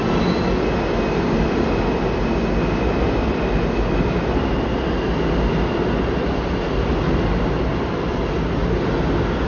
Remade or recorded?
recorded